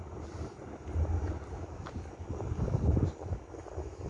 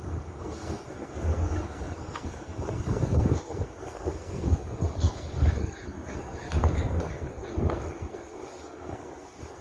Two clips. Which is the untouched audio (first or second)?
first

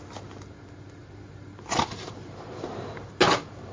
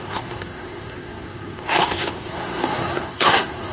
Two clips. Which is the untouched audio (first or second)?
first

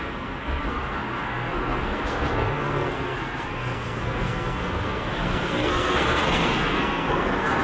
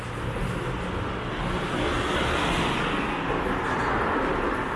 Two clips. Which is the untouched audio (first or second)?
second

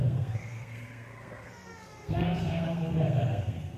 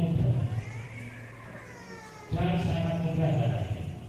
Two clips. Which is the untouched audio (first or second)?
second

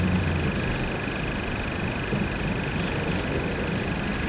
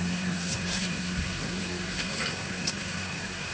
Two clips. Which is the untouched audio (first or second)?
first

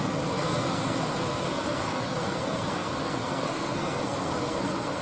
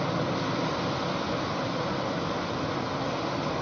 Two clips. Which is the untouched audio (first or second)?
second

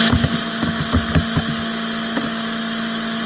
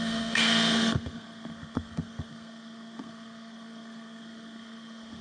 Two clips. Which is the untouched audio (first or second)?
first